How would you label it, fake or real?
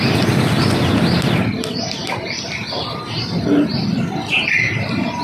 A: real